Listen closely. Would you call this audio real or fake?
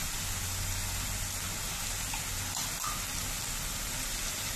real